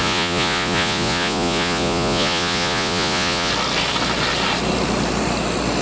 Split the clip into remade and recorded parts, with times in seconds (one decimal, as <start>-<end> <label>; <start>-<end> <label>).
0.0-3.5 remade; 3.5-5.8 recorded